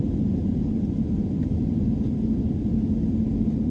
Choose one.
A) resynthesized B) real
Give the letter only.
B